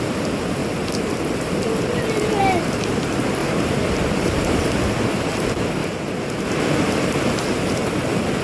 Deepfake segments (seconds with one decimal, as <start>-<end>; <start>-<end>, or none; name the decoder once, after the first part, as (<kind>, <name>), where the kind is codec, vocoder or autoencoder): 3.4-4.8 (vocoder, BigVGAN v2)